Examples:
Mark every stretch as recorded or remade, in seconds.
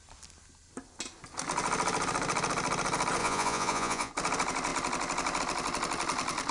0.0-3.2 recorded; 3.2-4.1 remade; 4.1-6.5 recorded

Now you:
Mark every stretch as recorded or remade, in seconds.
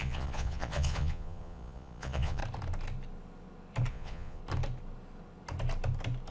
0.0-2.4 remade; 2.4-3.9 recorded; 3.9-4.4 remade; 4.4-6.3 recorded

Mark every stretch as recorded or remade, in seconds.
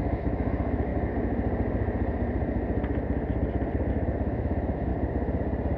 0.0-0.9 remade; 0.9-3.9 recorded; 3.9-4.9 remade; 4.9-5.8 recorded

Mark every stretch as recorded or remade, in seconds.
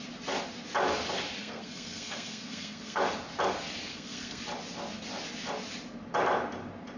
0.0-1.4 recorded; 1.4-3.0 remade; 3.0-3.9 recorded; 3.9-4.4 remade; 4.4-7.0 recorded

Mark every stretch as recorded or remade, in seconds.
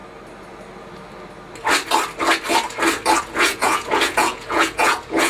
0.0-3.2 recorded; 3.2-5.3 remade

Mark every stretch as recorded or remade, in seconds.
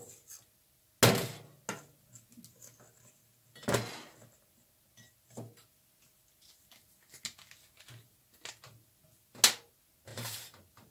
0.0-10.1 recorded; 10.1-10.9 remade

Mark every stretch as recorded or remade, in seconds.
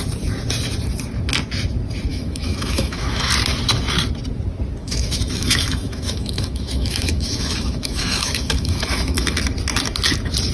0.0-2.1 recorded; 2.1-3.3 remade; 3.3-4.8 recorded; 4.8-9.4 remade; 9.4-10.5 recorded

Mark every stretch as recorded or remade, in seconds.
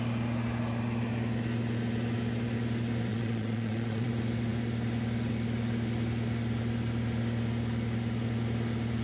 0.0-3.1 recorded; 3.1-4.1 remade; 4.1-9.0 recorded